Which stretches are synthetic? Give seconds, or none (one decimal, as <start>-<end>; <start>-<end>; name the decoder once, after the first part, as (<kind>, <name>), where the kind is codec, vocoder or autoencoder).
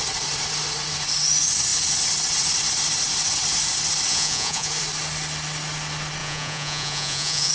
4.1-4.7 (vocoder, Vocos); 6.2-7.5